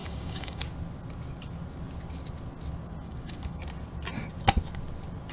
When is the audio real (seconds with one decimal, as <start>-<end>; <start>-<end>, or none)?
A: 0.6-3.0; 3.6-5.3